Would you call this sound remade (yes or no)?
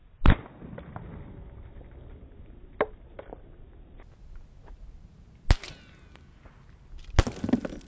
no